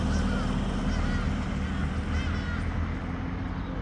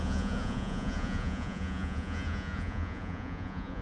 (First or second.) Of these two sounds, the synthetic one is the second